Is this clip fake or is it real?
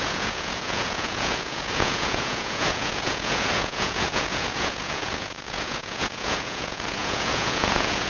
fake